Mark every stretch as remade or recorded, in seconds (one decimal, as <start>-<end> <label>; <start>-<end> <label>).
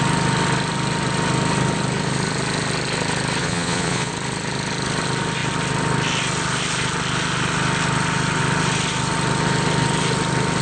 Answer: 0.0-3.4 recorded; 3.4-4.1 remade; 4.1-10.6 recorded